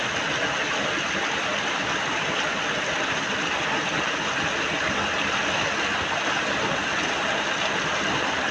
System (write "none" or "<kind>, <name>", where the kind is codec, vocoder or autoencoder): none